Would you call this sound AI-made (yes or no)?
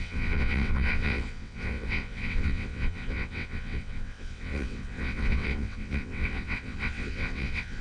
yes